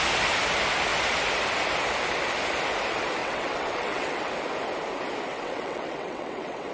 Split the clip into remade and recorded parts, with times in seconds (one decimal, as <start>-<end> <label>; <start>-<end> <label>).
0.0-3.2 recorded; 3.2-4.3 remade; 4.3-5.3 recorded; 5.3-6.7 remade